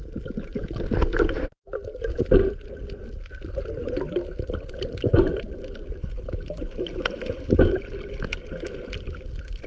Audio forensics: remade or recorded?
remade